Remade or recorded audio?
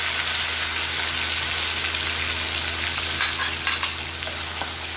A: recorded